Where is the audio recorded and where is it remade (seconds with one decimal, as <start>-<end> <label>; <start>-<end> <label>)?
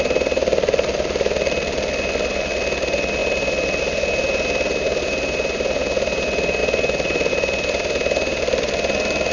0.0-9.3 recorded